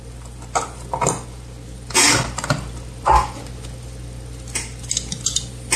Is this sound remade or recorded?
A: recorded